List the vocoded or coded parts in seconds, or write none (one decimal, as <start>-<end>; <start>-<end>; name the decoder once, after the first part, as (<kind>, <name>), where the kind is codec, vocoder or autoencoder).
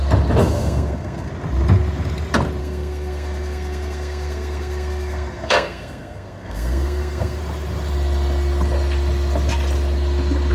0.4-1.3 (codec, SNAC); 2.6-7.4